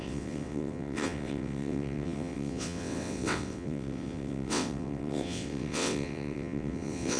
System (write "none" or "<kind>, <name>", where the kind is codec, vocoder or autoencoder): vocoder, WaveNeXt